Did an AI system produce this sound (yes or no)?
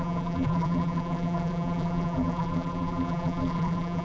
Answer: yes